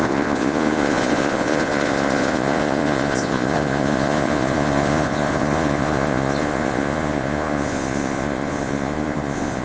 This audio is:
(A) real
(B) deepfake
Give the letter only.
B